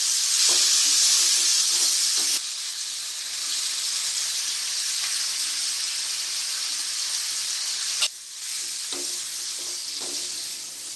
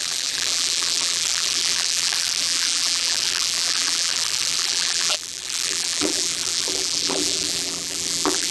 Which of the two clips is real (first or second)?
first